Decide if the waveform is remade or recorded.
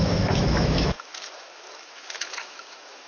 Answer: remade